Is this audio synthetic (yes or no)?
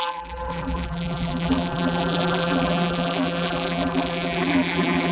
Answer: yes